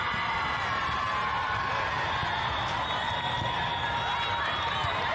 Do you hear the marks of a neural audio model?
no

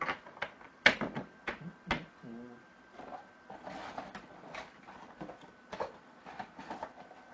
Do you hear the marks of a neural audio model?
no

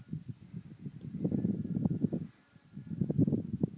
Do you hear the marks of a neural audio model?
no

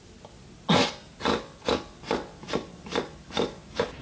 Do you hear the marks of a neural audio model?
no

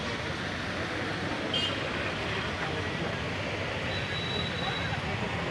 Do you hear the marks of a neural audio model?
no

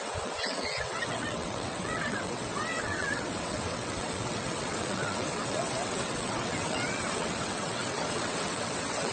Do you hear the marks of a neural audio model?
yes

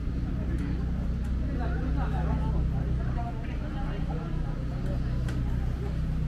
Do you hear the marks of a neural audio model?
no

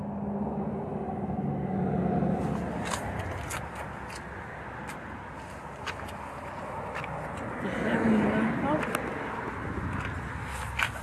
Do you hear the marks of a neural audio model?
no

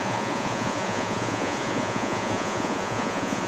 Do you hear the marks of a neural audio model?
yes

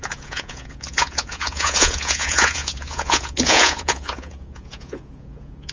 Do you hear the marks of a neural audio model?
yes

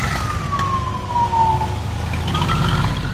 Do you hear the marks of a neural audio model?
no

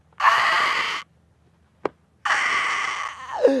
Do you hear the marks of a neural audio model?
no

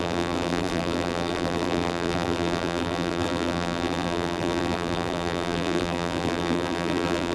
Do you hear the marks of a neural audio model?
yes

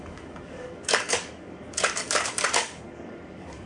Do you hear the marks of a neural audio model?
yes